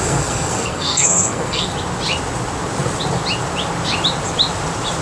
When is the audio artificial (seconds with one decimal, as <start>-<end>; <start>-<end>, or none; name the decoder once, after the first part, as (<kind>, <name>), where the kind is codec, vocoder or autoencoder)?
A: 0.0-1.7 (codec, SNAC)